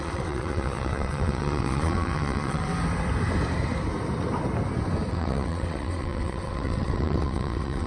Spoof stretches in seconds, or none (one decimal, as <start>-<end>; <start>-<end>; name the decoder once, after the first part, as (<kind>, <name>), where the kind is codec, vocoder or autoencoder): 0.0-2.7 (vocoder, WaveNeXt); 5.1-7.9

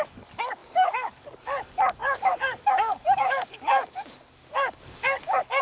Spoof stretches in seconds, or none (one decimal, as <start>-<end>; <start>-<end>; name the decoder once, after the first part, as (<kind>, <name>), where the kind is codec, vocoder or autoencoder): 0.0-5.6 (codec, DAC)

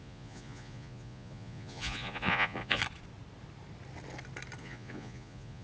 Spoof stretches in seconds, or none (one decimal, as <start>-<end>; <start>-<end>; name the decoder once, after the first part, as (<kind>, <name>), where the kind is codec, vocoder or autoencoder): 0.0-2.8 (vocoder, Vocos); 4.6-5.6

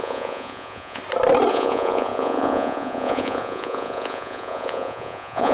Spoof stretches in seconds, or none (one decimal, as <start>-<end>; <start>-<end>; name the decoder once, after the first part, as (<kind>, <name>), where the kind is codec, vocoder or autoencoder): 0.0-1.0 (vocoder, Vocos); 1.5-5.5

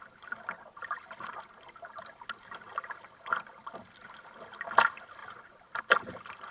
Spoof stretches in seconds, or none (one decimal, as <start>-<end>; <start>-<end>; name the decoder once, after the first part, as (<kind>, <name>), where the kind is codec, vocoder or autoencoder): none

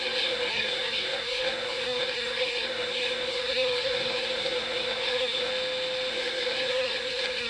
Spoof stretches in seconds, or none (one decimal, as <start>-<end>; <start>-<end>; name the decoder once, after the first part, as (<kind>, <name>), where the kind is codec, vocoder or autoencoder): 0.0-5.5 (codec, SNAC); 6.1-7.5

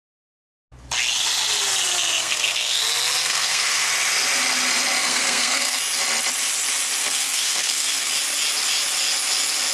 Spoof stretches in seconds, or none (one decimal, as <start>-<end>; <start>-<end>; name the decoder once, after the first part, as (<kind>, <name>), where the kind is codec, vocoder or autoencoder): 2.2-2.8 (codec, SNAC); 3.2-3.9; 5.0-5.8; 7.0-8.1